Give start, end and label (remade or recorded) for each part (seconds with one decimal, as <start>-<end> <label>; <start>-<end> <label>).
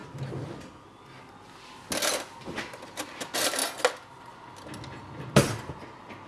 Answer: 0.0-6.3 recorded